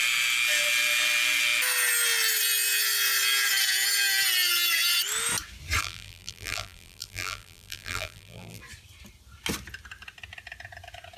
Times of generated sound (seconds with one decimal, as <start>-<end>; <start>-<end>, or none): 5.8-8.6